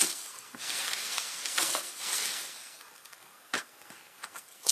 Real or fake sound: fake